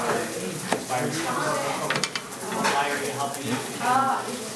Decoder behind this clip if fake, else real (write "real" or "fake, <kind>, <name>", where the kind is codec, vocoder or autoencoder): real